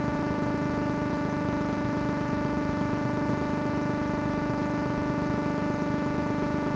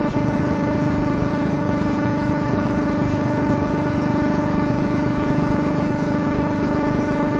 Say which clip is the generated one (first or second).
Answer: second